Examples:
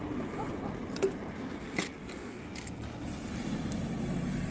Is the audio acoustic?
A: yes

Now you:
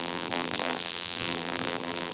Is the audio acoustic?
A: no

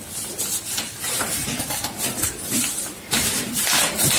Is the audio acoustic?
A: yes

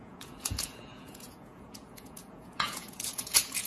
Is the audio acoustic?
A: no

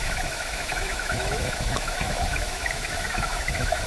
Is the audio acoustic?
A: no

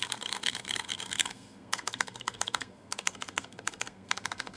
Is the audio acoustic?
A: no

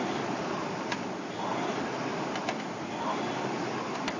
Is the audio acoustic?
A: yes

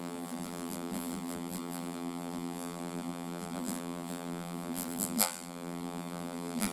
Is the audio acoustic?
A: no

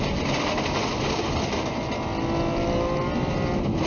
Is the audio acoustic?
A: yes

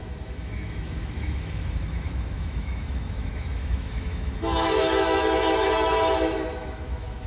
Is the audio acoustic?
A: no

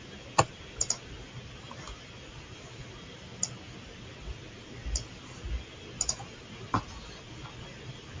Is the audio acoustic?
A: yes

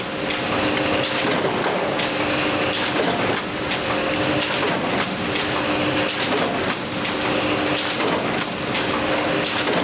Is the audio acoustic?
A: yes